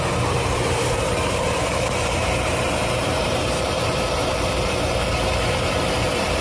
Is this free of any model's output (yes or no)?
no